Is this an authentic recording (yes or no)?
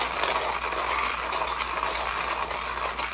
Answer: yes